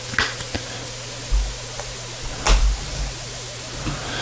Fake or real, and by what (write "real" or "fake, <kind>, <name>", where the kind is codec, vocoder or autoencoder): real